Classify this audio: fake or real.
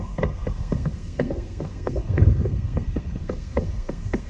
fake